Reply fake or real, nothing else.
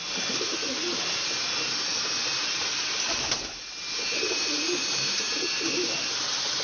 real